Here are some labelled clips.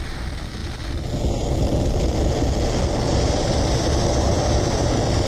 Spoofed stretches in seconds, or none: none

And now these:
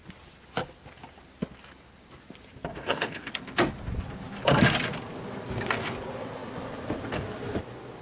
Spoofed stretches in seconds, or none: 2.7-3.3 (codec, DAC)

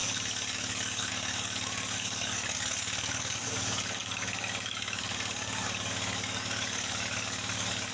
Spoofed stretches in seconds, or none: 0.0-7.9 (codec, DAC)

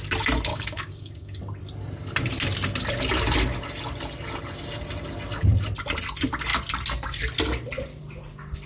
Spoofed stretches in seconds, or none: 0.5-1.4 (codec, DAC)

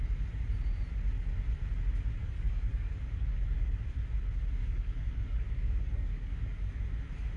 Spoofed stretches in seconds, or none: 2.2-3.8 (codec, DAC); 4.6-6.8

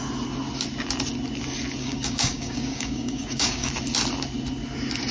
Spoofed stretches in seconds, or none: 1.8-3.7 (codec, DAC)

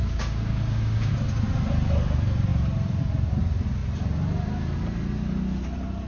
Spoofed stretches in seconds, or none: 0.0-1.1 (codec, DAC)

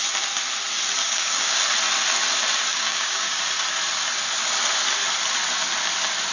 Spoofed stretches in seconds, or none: 1.0-1.6 (codec, DAC); 2.7-3.4